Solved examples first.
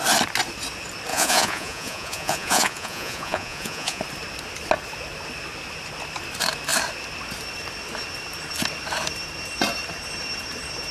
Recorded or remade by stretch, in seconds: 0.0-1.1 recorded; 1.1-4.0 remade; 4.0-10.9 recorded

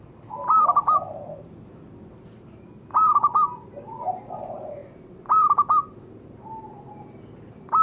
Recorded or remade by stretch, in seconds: 0.0-7.8 recorded